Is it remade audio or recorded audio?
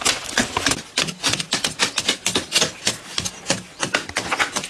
recorded